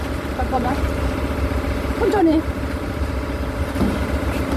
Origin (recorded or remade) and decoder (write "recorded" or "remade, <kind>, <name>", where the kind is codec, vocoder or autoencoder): remade, vocoder, BigVGAN v2